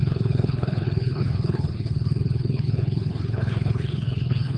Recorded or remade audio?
remade